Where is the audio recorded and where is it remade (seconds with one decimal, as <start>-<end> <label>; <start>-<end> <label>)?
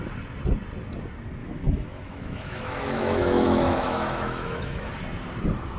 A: 0.0-1.4 recorded; 1.4-4.9 remade; 4.9-5.8 recorded